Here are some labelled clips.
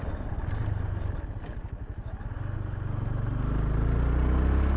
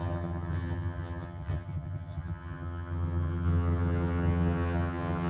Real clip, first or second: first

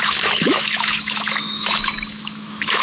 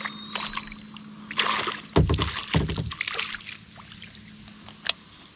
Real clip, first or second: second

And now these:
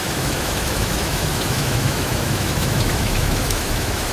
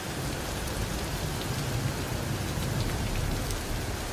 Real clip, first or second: second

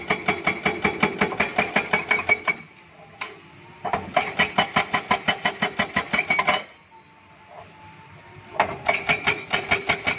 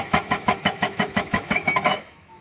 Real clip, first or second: first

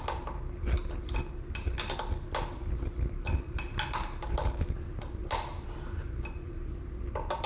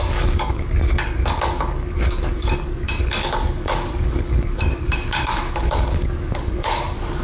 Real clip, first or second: first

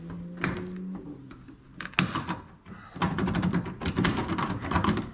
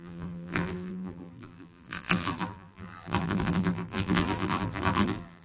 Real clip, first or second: first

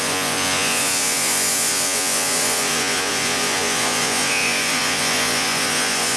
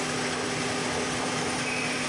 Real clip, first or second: second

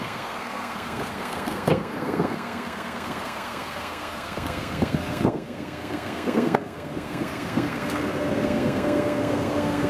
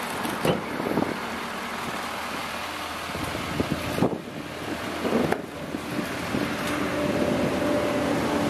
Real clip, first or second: second